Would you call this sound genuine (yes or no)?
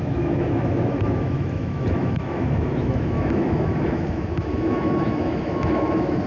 no